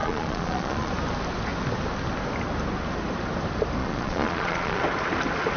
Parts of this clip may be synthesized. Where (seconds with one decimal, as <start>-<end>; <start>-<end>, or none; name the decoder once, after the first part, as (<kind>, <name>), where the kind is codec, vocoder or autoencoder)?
0.0-0.9 (vocoder, Vocos); 3.8-4.8